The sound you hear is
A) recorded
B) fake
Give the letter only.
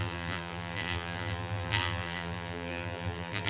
B